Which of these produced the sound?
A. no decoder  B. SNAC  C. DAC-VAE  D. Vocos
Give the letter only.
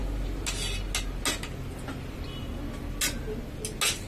A